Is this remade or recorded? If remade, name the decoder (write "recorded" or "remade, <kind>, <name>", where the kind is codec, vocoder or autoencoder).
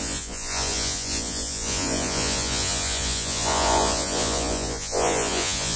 remade, vocoder, Vocos